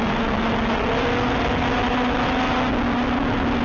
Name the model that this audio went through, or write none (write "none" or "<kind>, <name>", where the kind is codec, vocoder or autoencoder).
none